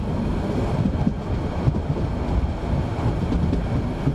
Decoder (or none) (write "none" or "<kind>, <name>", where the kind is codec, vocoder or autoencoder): none